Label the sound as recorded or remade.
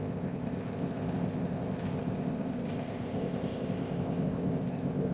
remade